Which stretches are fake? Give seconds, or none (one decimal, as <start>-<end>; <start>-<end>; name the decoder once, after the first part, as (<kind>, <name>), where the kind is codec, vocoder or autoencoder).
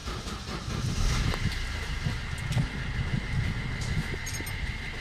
none